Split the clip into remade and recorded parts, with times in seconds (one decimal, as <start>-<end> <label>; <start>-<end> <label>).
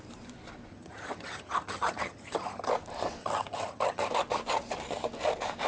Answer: 0.0-0.7 recorded; 0.7-2.7 remade; 2.7-3.2 recorded; 3.2-4.1 remade; 4.1-5.7 recorded